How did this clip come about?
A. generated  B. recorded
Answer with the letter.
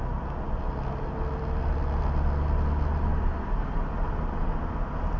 B